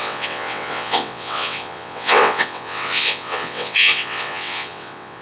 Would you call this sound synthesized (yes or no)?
yes